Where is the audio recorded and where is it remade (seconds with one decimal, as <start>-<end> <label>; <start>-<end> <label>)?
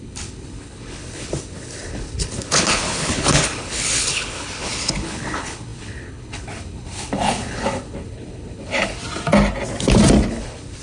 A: 0.0-9.0 remade; 9.0-10.3 recorded; 10.3-10.8 remade